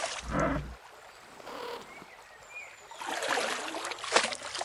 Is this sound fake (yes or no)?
no